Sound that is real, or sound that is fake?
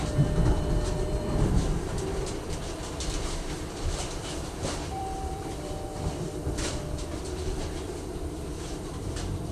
fake